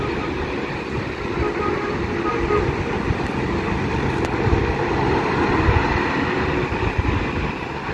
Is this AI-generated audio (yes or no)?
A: no